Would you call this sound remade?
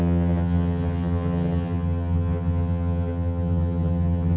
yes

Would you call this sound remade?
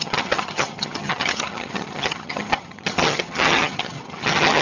yes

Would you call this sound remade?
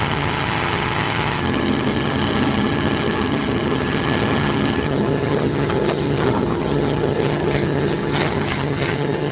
yes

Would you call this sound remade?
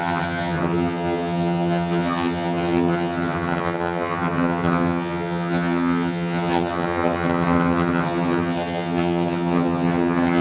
yes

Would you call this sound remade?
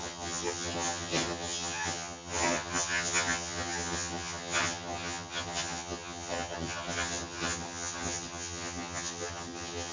yes